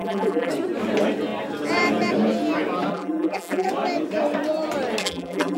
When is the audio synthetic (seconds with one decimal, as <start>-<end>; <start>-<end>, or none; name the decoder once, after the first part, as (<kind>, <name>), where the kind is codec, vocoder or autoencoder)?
0.0-0.5 (vocoder, BigVGAN v2); 2.9-3.7; 5.0-5.6